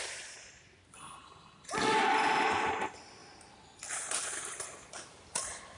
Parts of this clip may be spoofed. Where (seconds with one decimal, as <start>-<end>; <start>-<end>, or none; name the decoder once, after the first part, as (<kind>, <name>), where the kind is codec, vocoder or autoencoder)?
none